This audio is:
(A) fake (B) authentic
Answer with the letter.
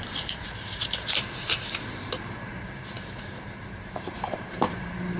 A